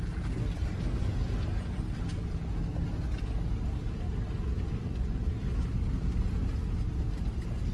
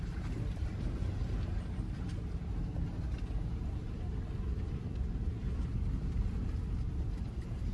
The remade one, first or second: second